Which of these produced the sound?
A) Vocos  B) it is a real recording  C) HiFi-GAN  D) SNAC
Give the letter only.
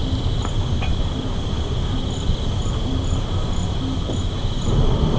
B